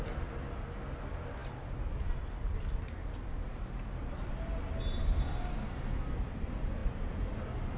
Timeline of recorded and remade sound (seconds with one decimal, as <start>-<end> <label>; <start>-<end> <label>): 0.0-7.8 recorded